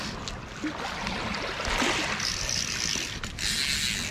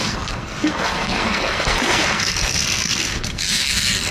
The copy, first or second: second